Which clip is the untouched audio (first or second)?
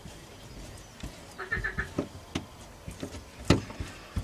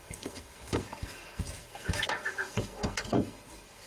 first